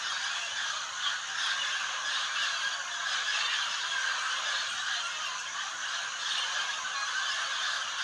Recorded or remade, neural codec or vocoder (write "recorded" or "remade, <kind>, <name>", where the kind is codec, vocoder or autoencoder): recorded